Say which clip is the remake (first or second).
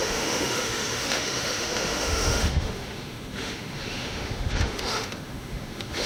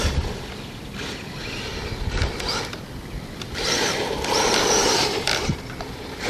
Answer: first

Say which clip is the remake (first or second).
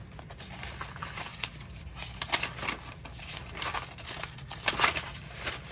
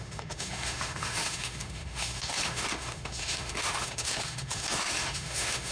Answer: second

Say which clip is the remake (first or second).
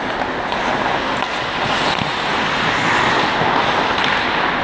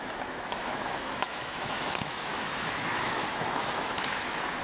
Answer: second